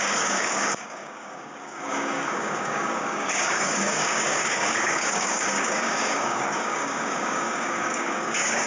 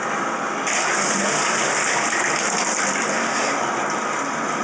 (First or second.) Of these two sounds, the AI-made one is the first